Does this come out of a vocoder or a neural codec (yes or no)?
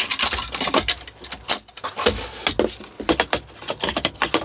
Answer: no